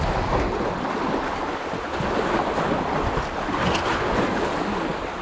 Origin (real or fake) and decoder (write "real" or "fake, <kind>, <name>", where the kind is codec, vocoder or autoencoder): real